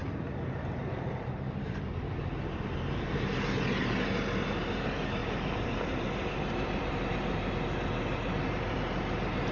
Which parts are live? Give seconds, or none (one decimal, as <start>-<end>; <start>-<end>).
3.1-5.2; 7.5-9.5